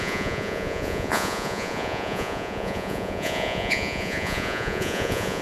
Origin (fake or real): fake